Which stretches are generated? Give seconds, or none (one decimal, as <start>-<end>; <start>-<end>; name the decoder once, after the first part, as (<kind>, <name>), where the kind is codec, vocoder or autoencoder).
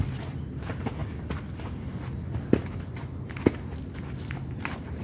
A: none